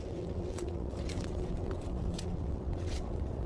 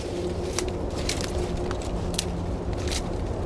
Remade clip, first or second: first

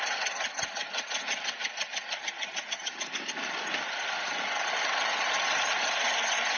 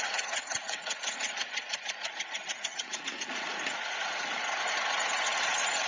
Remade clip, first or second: second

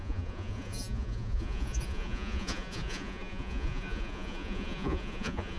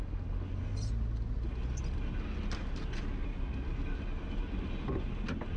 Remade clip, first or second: first